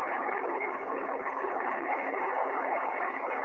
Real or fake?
fake